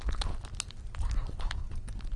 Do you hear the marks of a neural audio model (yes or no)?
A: no